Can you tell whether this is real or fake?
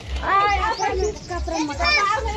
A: real